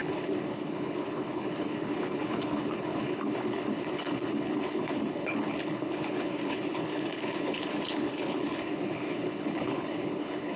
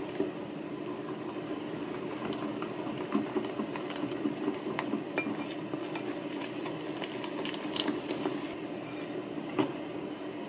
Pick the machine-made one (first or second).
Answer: first